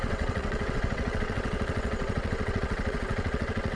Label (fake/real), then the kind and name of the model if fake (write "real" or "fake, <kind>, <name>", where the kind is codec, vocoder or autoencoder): fake, vocoder, WaveNeXt